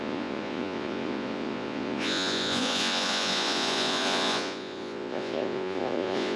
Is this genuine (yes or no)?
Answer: no